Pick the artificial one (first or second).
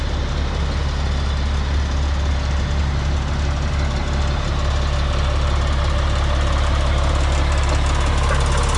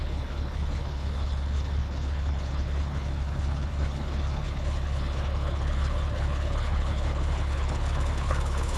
second